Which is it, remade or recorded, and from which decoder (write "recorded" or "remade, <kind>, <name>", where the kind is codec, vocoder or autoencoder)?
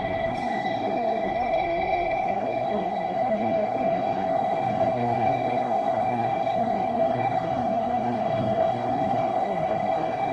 remade, codec, SNAC